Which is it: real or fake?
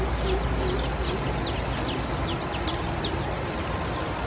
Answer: real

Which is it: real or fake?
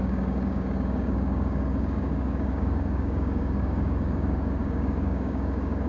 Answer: fake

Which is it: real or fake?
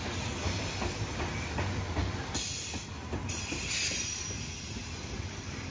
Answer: real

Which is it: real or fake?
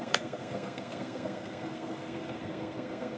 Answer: fake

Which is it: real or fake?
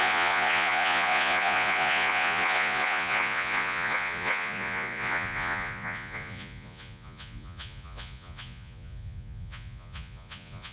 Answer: fake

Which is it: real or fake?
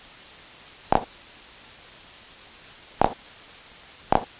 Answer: real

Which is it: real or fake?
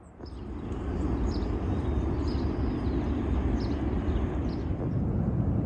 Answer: real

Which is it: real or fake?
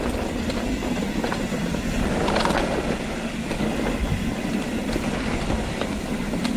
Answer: real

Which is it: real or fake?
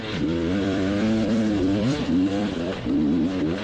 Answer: fake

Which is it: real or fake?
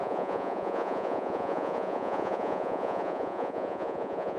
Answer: fake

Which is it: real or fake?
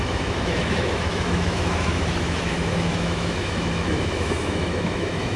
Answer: fake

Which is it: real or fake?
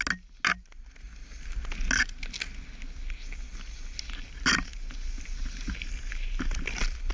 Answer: real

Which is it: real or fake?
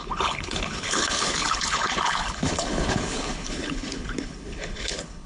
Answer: fake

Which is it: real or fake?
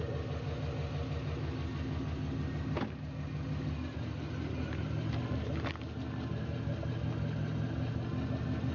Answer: real